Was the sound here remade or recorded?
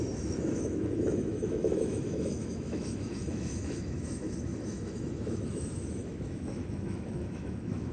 remade